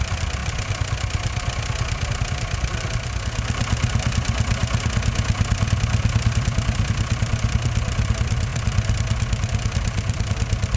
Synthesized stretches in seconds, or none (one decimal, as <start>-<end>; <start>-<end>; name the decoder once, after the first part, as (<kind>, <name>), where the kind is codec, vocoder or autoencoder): 0.0-0.4 (vocoder, BigVGAN v2); 2.1-4.6; 5.7-10.8